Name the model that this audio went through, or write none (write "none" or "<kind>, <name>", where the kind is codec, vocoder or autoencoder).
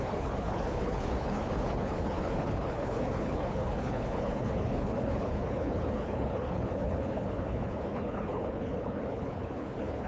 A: codec, HILCodec